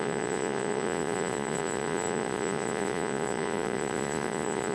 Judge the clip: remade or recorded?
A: remade